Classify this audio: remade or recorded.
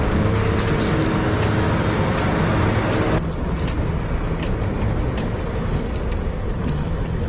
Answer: recorded